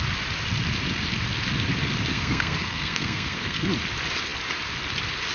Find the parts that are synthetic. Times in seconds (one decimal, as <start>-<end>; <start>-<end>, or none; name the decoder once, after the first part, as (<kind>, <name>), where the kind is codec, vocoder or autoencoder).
2.1-3.7 (codec, SNAC)